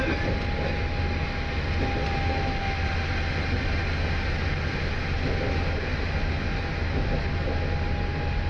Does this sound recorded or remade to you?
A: recorded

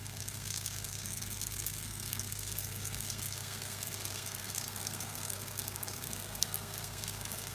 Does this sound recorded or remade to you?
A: remade